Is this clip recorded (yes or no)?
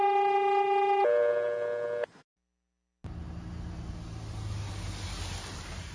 yes